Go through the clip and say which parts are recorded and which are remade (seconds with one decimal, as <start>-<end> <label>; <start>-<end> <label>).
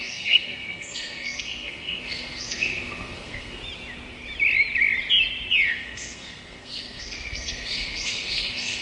0.0-3.6 remade; 3.6-5.7 recorded; 5.7-8.8 remade